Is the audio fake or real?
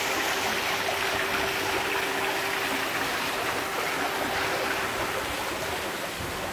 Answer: real